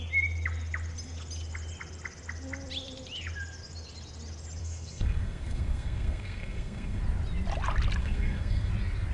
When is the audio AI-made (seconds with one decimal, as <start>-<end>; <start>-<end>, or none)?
4.6-7.0; 8.0-8.7